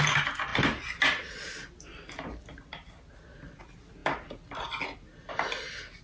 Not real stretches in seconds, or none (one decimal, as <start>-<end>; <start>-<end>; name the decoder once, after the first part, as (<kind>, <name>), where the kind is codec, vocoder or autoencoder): none